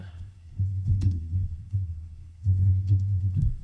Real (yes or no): no